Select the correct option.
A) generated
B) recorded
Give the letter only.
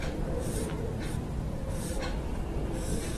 A